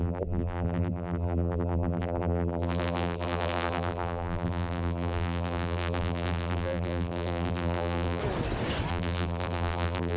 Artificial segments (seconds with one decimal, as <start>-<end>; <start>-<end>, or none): 0.0-8.2; 8.9-10.2